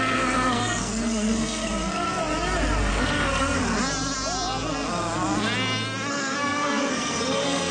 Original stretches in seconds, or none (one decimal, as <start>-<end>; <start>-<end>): 2.1-2.9; 3.6-6.1